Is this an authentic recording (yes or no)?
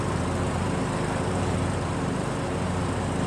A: no